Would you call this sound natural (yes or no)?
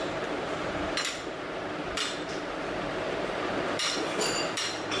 no